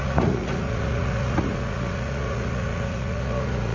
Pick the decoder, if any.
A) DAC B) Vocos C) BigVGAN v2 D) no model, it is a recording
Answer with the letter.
B